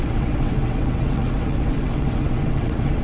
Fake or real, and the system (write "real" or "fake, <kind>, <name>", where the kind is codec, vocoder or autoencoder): fake, vocoder, WaveNeXt